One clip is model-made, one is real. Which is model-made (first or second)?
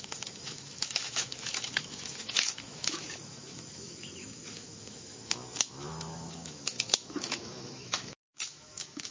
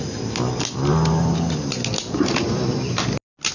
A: first